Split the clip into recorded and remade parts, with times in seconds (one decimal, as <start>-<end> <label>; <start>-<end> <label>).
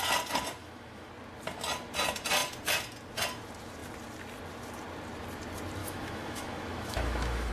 0.0-0.6 recorded; 0.6-1.1 remade; 1.1-5.8 recorded; 5.8-7.5 remade